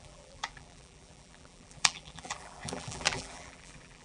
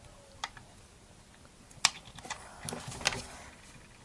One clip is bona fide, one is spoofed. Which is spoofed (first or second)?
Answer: first